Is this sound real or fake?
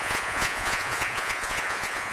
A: fake